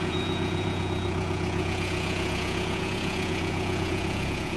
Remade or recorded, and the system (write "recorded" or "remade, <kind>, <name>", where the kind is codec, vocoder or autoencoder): remade, vocoder, Vocos